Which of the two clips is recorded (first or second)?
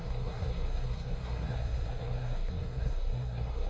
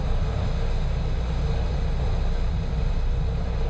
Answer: second